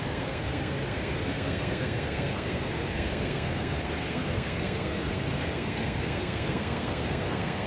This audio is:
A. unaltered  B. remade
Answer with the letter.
B